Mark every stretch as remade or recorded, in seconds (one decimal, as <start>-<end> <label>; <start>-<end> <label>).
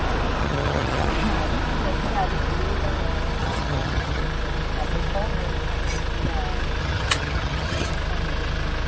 0.0-0.4 recorded; 0.4-1.1 remade; 1.1-3.4 recorded; 3.4-4.2 remade; 4.2-6.8 recorded; 6.8-7.9 remade; 7.9-8.9 recorded